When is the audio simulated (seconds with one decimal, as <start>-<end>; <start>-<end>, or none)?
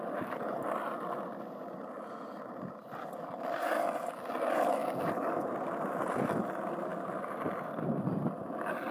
none